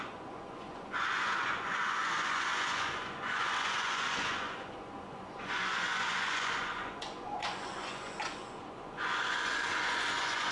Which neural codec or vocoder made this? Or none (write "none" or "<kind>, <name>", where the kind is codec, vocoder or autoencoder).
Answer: vocoder, Vocos